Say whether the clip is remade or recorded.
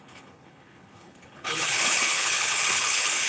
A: remade